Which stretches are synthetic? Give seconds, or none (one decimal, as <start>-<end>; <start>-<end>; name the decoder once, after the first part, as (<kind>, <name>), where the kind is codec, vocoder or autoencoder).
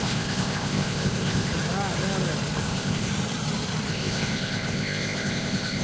0.0-1.5 (codec, ZipCodec); 2.6-3.1; 3.9-5.8